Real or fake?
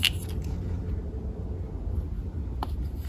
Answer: real